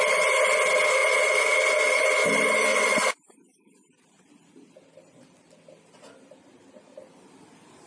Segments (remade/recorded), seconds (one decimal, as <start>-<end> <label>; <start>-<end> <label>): 0.0-2.7 recorded; 2.7-4.1 remade; 4.1-7.9 recorded